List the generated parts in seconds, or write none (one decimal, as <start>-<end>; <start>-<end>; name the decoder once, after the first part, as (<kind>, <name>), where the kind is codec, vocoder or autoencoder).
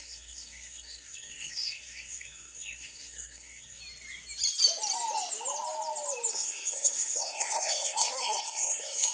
0.0-3.8 (codec, SNAC); 6.3-9.1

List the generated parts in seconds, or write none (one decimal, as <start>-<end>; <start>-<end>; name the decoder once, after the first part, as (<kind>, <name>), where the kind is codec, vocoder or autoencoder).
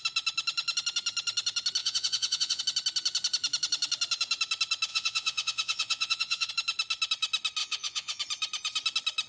1.8-2.6 (vocoder, Vocos); 4.9-6.5; 7.6-8.2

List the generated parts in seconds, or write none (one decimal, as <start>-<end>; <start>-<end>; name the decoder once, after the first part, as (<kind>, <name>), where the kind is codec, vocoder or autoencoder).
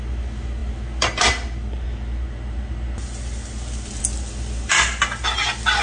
none